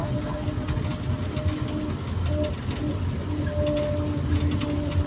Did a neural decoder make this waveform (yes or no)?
no